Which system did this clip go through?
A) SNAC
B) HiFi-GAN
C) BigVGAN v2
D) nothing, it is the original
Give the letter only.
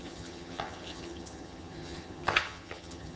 B